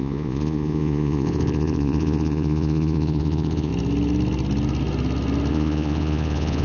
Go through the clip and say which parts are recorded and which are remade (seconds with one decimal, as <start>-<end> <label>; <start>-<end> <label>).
0.0-3.7 remade; 3.7-5.5 recorded; 5.5-6.6 remade